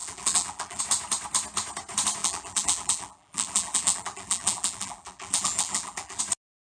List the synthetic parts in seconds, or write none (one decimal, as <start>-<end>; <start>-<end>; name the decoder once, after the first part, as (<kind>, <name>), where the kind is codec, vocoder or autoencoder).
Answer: 0.0-0.8 (vocoder, BigVGAN v2); 2.2-6.2